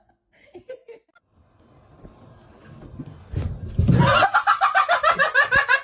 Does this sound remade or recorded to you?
recorded